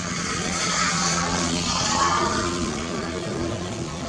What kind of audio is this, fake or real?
fake